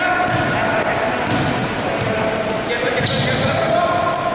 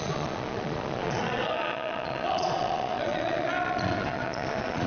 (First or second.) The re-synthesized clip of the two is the second